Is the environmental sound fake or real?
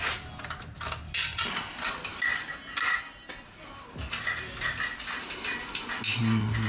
real